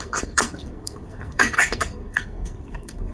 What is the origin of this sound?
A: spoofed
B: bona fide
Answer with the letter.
A